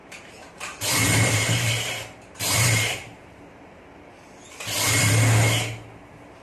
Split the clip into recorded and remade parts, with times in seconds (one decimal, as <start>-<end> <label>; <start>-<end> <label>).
0.0-3.8 remade; 3.8-6.4 recorded